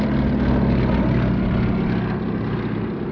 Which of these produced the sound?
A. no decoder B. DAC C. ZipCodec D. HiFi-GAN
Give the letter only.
A